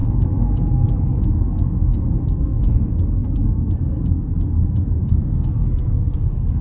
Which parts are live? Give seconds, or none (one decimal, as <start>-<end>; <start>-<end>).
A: none

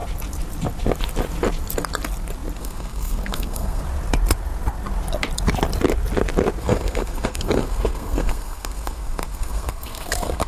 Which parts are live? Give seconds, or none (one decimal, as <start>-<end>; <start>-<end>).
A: 0.0-2.6; 3.8-6.6

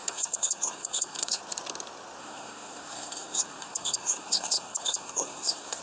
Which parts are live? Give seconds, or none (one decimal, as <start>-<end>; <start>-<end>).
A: 1.4-2.2

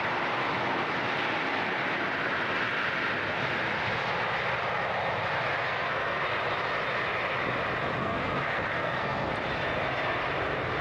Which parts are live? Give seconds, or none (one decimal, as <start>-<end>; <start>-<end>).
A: 0.0-5.6; 6.2-8.0; 9.3-10.8

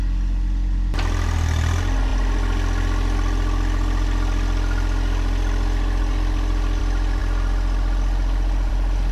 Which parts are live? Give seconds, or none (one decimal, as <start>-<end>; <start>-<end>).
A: 0.0-9.1

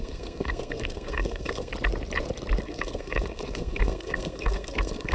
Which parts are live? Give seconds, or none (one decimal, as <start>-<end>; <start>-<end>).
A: 1.7-2.6

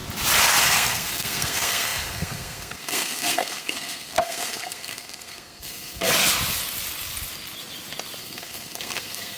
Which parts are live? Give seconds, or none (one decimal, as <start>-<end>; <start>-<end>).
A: 0.0-0.6; 6.1-8.2